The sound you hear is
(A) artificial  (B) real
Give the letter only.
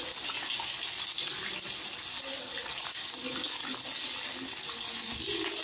B